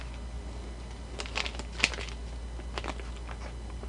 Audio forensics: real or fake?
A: real